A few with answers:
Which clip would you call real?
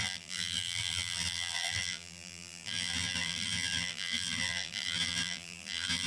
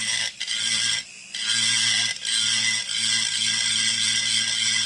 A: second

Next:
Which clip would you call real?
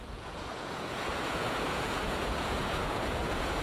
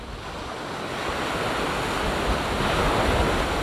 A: second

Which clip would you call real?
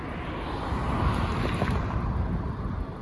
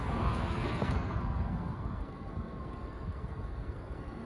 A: first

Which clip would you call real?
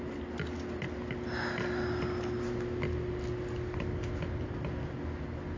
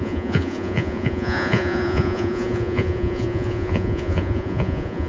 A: first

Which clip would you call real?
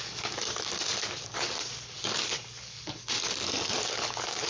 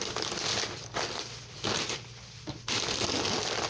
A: second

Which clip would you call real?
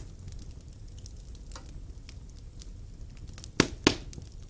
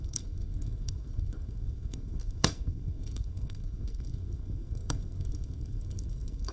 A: first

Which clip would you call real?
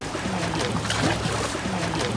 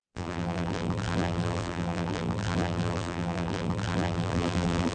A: first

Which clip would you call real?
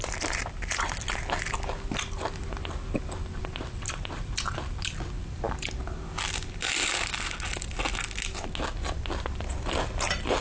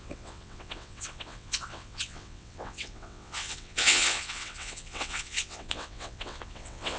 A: first